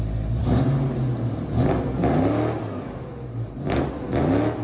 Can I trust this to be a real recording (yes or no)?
yes